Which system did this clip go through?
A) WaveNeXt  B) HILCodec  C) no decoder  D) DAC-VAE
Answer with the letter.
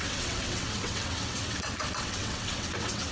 A